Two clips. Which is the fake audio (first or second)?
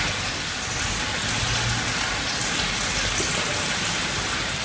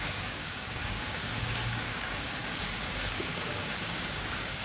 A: second